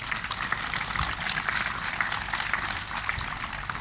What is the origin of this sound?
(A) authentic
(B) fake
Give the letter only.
A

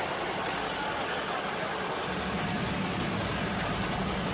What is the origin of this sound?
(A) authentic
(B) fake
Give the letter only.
A